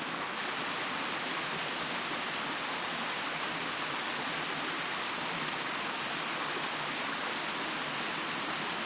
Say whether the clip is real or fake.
real